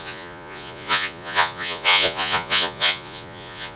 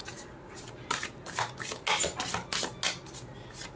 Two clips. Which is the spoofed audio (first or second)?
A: first